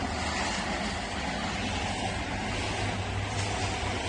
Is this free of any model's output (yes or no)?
yes